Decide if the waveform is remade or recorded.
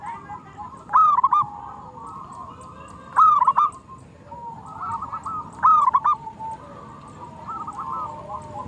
recorded